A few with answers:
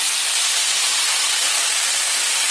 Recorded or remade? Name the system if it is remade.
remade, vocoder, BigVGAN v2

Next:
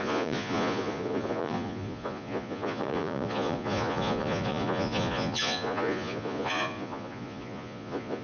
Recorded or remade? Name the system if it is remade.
remade, vocoder, Vocos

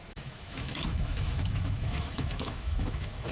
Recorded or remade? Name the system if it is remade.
remade, autoencoder, DAC-VAE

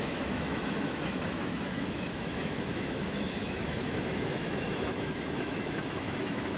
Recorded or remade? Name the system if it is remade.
remade, autoencoder, DAC-VAE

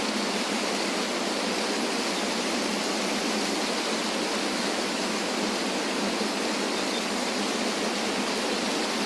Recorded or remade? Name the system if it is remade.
recorded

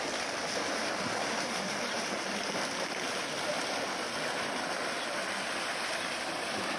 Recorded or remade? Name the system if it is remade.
remade, vocoder, BigVGAN v2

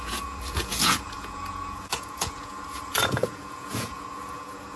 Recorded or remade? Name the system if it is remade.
remade, vocoder, Vocos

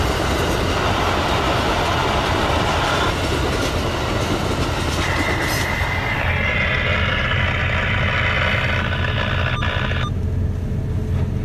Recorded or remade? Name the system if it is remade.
recorded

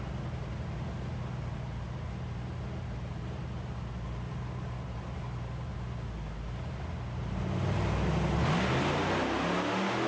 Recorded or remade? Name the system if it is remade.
recorded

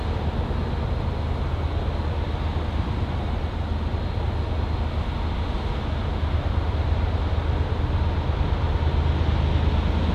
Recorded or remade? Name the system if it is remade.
recorded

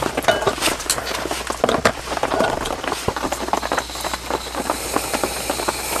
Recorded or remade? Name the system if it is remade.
recorded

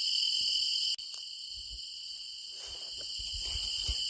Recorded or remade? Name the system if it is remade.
recorded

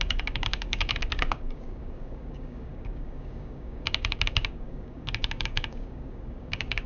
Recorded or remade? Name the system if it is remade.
remade, codec, DAC